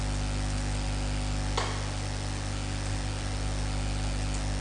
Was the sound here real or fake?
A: real